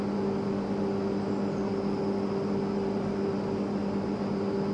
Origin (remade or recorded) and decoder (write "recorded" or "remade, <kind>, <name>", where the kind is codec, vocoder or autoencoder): recorded